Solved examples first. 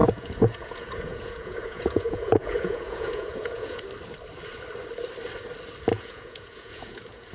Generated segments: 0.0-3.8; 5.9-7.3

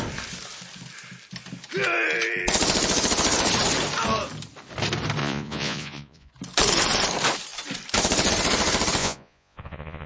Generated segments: 5.2-6.3; 9.0-10.1

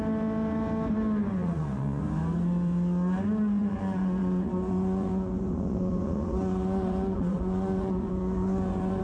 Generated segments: 1.4-2.0; 3.6-9.0

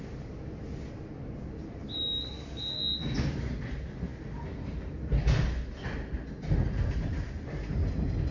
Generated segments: none

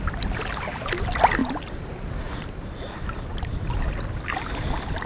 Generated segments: none

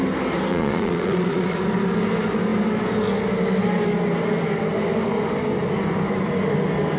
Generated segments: 0.5-1.6